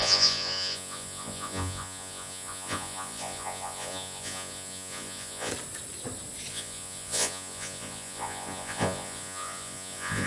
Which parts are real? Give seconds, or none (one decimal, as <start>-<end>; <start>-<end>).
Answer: 5.5-6.5